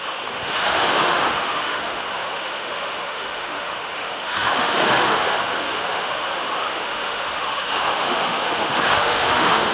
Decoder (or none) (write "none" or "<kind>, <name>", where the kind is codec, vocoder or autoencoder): autoencoder, DAC-VAE